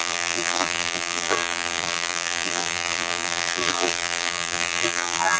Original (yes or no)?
no